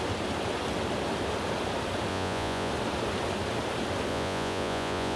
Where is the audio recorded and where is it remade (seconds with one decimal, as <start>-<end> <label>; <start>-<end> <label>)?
0.0-2.1 recorded; 2.1-2.7 remade; 2.7-4.1 recorded; 4.1-5.2 remade